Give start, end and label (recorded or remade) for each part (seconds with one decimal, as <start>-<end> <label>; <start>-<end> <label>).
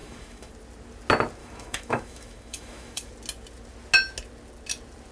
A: 0.0-0.5 remade; 0.5-1.4 recorded; 1.4-3.1 remade; 3.1-5.1 recorded